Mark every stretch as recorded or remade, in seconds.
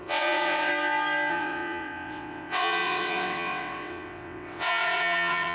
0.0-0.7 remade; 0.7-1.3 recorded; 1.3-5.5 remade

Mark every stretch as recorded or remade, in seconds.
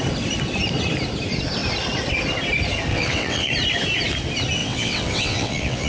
0.0-2.9 recorded; 2.9-3.5 remade; 3.5-4.6 recorded; 4.6-5.9 remade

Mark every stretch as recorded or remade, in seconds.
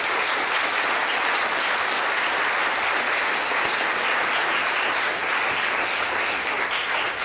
0.0-7.2 recorded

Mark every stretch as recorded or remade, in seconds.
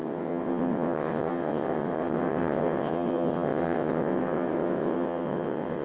0.0-5.8 remade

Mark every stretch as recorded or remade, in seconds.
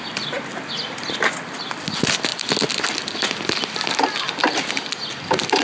0.0-5.6 recorded